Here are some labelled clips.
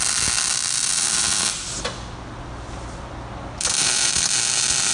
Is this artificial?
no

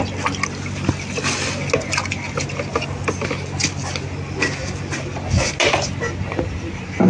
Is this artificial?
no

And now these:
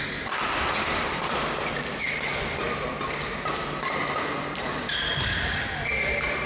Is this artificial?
no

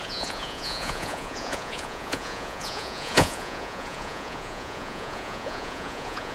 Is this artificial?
yes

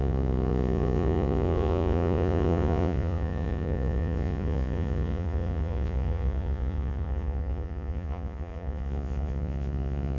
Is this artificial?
yes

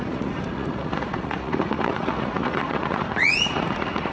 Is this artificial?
yes